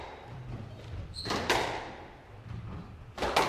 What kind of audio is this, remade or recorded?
recorded